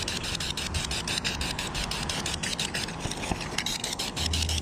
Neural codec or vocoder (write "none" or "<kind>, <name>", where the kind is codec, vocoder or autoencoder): none